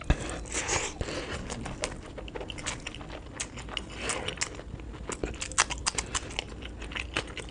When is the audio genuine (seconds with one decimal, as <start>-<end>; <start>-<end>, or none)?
0.0-7.5